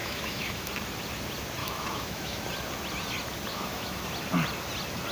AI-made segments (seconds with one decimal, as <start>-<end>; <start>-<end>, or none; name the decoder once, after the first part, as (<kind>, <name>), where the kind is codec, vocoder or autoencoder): 0.0-0.7 (autoencoder, DAC-VAE); 1.6-2.4; 3.5-4.0